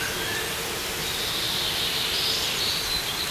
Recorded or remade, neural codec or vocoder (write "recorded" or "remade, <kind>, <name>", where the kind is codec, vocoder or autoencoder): recorded